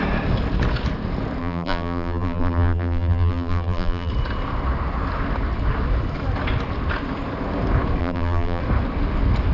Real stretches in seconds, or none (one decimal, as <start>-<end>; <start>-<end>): 0.0-1.4; 4.1-8.0; 8.6-9.5